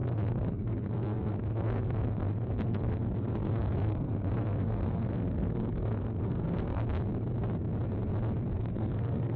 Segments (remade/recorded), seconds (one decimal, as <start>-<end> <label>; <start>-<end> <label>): 0.0-6.8 remade; 6.8-8.5 recorded; 8.5-9.4 remade